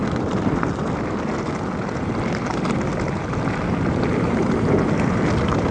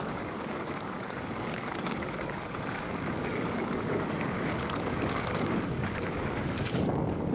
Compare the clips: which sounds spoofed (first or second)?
second